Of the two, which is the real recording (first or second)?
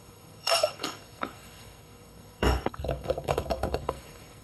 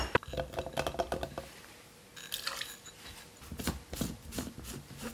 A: second